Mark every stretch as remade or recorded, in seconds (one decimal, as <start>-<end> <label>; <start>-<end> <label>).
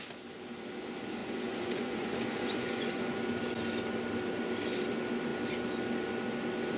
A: 0.0-1.2 recorded; 1.2-3.2 remade; 3.2-6.8 recorded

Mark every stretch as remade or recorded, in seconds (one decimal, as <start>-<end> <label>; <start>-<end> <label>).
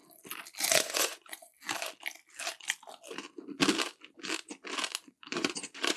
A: 0.0-0.7 recorded; 0.7-1.5 remade; 1.5-5.1 recorded; 5.1-6.0 remade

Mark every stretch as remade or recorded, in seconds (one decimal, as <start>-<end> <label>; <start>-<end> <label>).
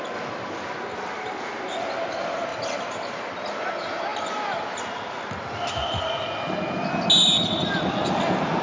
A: 0.0-8.6 recorded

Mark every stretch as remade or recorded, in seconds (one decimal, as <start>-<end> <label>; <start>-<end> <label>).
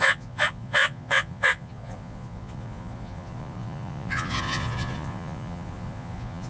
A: 0.0-6.5 remade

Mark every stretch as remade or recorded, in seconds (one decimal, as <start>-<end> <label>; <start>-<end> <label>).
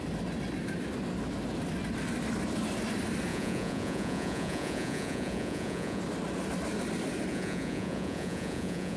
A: 0.0-3.3 recorded; 3.3-6.0 remade; 6.0-7.3 recorded; 7.3-9.0 remade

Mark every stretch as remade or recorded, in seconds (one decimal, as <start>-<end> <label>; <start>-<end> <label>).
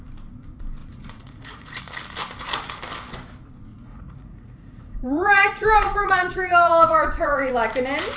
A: 0.0-0.8 recorded; 0.8-1.8 remade; 1.8-3.7 recorded; 3.7-7.5 remade; 7.5-8.2 recorded